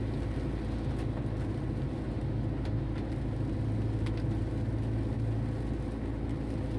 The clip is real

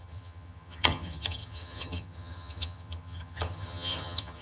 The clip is fake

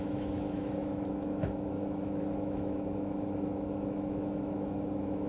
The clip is fake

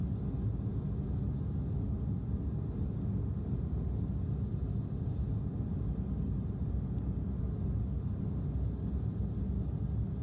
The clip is real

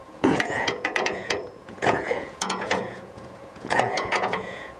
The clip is fake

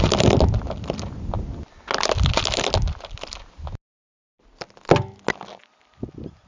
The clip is real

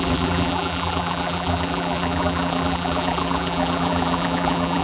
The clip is fake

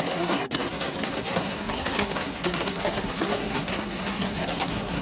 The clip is fake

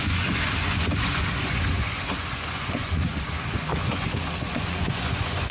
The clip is fake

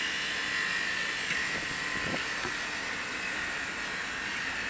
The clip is real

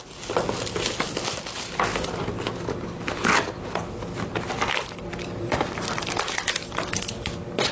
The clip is real